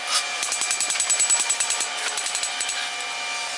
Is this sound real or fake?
real